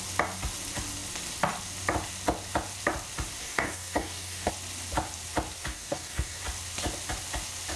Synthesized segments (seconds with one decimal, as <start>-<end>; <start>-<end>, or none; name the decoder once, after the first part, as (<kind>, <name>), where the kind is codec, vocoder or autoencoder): 3.4-4.5 (codec, DAC); 5.7-6.4